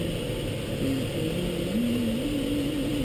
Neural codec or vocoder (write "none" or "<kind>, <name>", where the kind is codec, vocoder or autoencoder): none